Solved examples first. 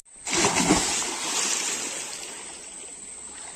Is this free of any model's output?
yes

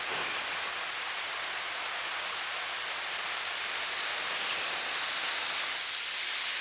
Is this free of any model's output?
yes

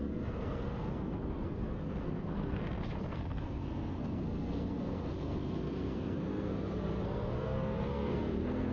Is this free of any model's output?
no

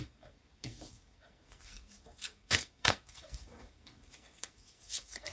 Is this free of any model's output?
no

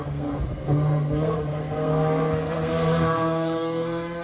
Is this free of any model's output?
no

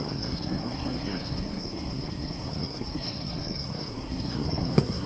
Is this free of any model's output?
no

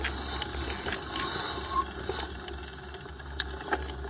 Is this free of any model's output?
yes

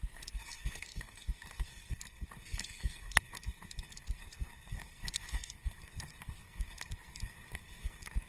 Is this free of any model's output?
no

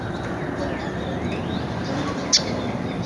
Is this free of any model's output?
yes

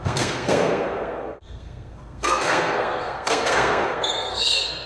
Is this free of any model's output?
no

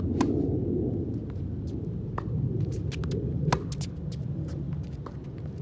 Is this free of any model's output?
yes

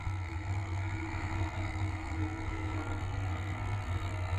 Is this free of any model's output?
no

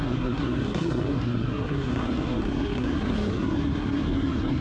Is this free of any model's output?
no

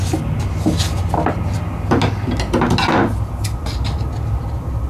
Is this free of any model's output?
yes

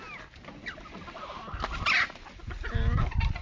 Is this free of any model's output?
yes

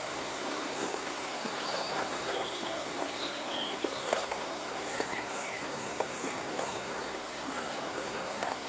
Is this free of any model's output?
no